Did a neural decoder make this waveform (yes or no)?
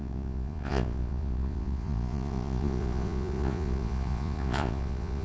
yes